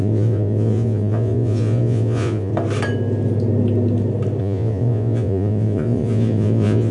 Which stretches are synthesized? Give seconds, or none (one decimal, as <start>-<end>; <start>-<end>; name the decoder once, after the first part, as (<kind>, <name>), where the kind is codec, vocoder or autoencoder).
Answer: 0.0-2.5 (vocoder, Vocos); 4.4-6.9